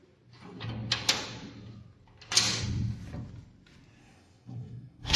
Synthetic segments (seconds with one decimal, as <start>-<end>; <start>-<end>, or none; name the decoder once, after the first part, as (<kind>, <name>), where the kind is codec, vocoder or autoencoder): 4.0-5.2 (codec, SNAC)

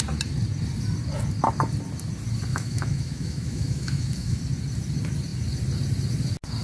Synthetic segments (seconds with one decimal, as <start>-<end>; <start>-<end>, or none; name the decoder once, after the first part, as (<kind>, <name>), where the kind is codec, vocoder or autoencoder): 2.5-4.4 (autoencoder, DAC-VAE)

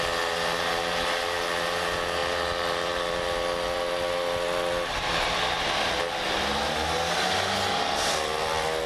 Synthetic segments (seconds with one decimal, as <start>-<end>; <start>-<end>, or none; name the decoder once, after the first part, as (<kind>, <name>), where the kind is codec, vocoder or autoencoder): none

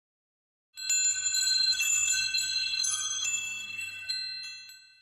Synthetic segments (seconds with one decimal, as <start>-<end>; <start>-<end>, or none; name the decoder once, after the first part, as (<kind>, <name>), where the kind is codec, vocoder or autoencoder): 1.1-4.1 (codec, SNAC)